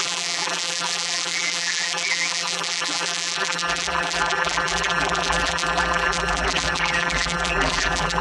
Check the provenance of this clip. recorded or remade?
remade